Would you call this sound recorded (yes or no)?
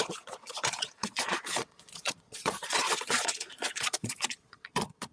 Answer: no